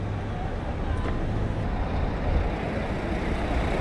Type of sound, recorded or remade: recorded